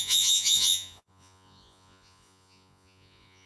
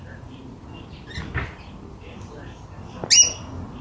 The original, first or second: second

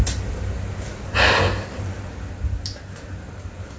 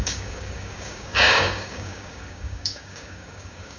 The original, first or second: first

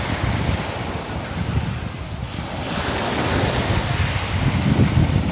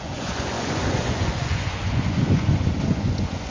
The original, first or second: first